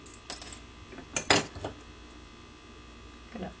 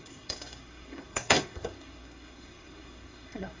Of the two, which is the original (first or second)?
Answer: first